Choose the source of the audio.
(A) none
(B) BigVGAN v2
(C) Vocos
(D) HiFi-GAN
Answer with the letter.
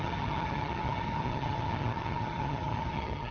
D